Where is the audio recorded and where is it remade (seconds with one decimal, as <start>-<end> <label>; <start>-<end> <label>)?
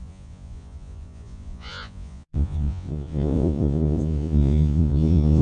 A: 0.0-5.4 remade